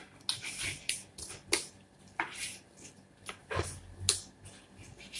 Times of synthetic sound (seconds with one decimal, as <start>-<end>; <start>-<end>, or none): none